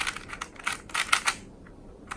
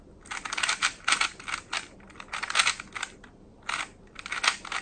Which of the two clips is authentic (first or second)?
second